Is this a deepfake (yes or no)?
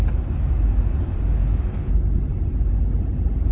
no